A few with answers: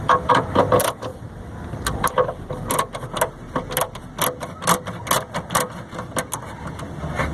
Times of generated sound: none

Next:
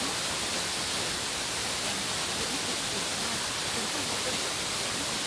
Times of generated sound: none

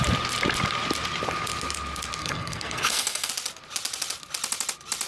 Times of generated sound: 2.2-3.3 (codec, SNAC)

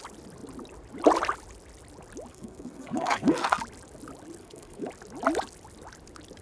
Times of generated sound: 2.3-3.6 (codec, SNAC); 4.4-4.9